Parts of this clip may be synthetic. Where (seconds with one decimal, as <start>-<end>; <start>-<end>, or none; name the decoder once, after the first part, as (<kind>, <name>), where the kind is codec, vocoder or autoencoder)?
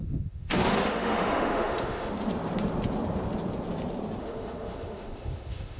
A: 0.0-2.1 (autoencoder, DAC-VAE); 4.2-5.8